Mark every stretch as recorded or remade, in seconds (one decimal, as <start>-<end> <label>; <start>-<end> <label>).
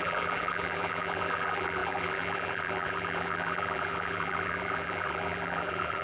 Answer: 0.0-6.0 remade